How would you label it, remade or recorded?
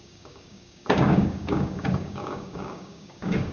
remade